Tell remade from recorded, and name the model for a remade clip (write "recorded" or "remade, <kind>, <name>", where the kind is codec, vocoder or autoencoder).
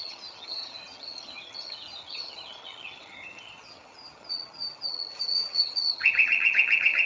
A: remade, vocoder, HiFi-GAN